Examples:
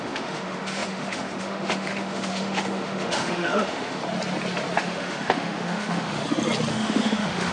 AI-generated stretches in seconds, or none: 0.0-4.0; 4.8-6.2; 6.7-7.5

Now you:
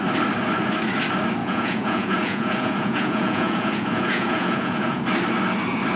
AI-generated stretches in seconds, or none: 1.4-5.0

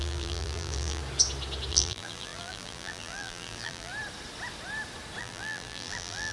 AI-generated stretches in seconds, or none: 0.0-1.0; 1.7-3.9; 5.2-6.3

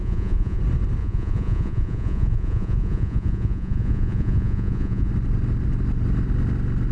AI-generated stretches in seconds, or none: 0.0-0.6; 1.0-5.1

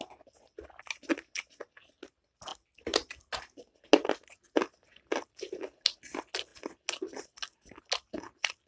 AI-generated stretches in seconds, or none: none

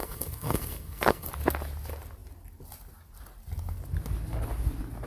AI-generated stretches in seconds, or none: 0.0-1.3

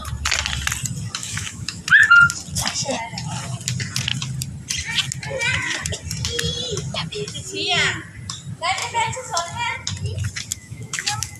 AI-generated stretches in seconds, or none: 1.2-1.8; 8.8-9.4; 10.5-11.4

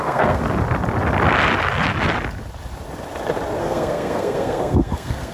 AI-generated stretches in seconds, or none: 0.0-0.4; 3.6-5.3